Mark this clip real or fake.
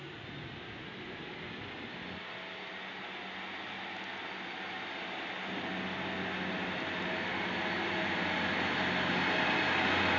real